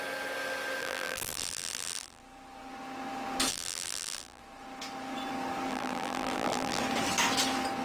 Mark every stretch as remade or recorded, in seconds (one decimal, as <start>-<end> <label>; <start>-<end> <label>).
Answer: 0.0-0.8 recorded; 0.8-2.2 remade; 2.2-3.5 recorded; 3.5-4.4 remade; 4.4-5.7 recorded; 5.7-6.8 remade; 6.8-7.8 recorded